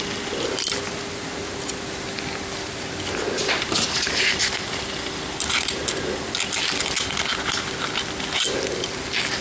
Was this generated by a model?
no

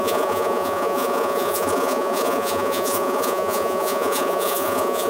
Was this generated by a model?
yes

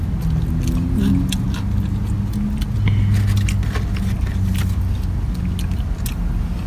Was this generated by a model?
no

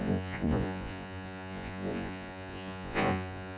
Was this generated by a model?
yes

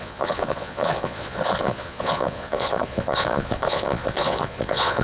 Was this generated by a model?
yes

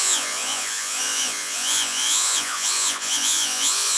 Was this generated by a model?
yes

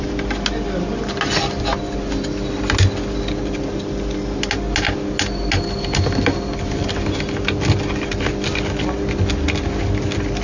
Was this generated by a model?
no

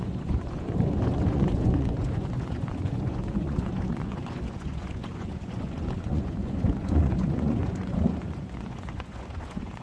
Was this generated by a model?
yes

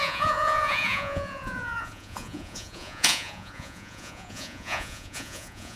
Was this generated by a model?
yes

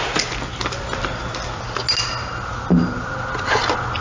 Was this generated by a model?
no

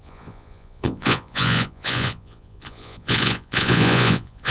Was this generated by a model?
yes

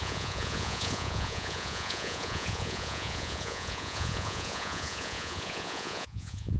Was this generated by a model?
yes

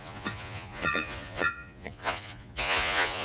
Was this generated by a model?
yes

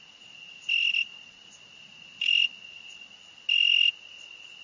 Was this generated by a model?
no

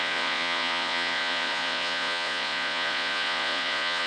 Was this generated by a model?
yes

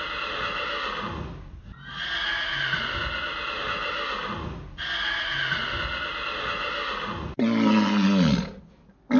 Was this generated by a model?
no